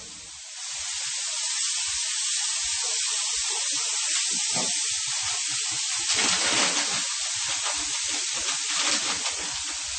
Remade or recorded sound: recorded